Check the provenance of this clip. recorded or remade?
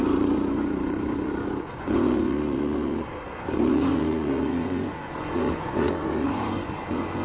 remade